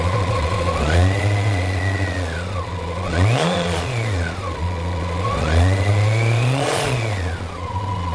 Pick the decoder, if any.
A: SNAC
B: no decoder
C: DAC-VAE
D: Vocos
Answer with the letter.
D